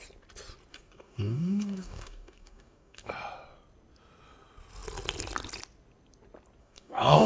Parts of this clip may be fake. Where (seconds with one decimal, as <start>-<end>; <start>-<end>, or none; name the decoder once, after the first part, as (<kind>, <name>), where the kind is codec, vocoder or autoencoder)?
0.7-3.1 (codec, DAC); 6.6-7.3